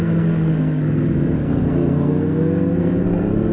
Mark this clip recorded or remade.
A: remade